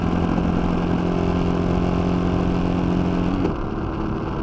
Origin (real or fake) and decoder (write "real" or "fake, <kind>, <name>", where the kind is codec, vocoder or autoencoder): real